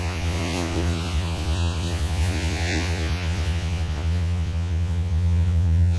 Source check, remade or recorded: remade